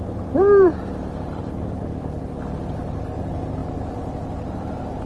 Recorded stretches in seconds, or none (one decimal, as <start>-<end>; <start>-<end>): 1.8-2.7